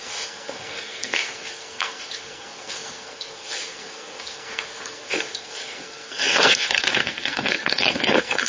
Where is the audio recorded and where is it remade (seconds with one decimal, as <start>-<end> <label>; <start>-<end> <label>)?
0.0-8.5 remade